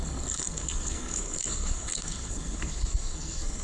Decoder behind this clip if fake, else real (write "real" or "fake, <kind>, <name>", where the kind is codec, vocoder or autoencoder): fake, codec, SNAC